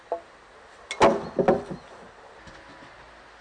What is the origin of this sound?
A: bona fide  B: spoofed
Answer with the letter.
A